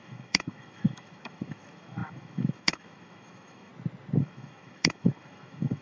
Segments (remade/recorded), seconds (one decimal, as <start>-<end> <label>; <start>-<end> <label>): 0.0-3.7 remade; 3.7-4.2 recorded; 4.2-5.8 remade